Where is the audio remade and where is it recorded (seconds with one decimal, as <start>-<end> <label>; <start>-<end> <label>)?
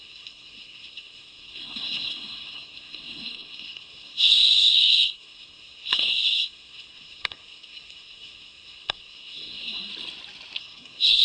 0.0-9.9 remade; 9.9-10.6 recorded; 10.6-11.2 remade